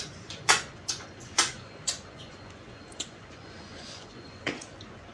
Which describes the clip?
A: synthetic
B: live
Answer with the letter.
A